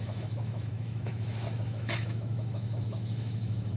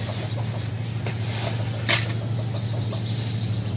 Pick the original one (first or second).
second